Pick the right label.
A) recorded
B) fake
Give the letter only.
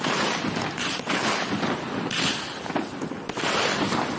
A